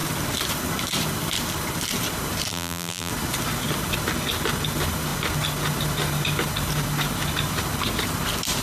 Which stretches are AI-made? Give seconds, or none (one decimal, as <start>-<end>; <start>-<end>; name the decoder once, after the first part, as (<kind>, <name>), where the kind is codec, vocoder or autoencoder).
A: 2.5-3.1 (vocoder, BigVGAN v2)